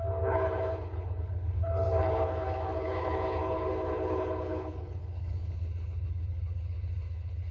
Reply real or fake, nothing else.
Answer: fake